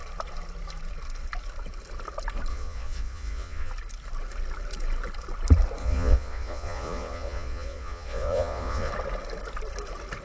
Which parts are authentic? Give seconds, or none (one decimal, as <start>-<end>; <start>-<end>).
0.0-2.5; 3.7-5.8; 8.9-10.2